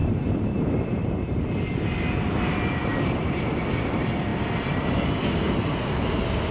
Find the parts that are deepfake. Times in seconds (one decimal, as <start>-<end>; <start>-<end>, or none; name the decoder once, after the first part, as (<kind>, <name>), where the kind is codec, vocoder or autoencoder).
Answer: 0.0-1.4 (vocoder, BigVGAN v2); 2.8-3.6

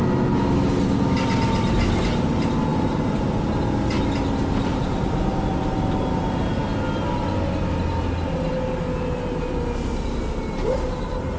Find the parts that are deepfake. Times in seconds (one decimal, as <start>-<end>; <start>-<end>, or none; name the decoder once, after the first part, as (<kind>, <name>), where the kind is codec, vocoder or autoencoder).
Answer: none

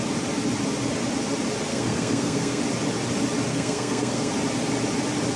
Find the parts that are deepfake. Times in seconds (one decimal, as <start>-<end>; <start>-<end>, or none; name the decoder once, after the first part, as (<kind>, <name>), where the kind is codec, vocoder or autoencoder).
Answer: 1.7-2.6 (codec, SNAC); 3.5-4.3